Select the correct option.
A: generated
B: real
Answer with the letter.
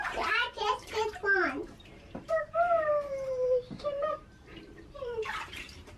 A